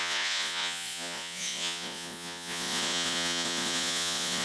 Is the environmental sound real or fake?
fake